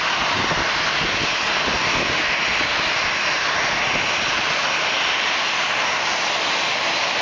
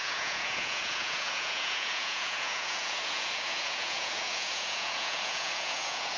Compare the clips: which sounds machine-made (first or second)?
second